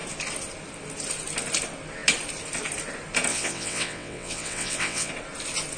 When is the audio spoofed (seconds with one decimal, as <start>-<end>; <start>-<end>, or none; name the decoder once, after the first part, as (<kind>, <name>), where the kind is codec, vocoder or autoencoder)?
3.3-5.1 (vocoder, WaveNeXt)